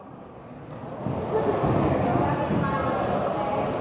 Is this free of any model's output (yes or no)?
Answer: yes